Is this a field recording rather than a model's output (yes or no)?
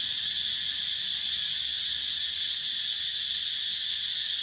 yes